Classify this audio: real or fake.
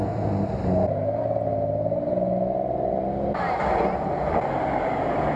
real